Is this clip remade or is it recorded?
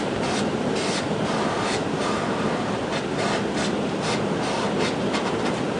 recorded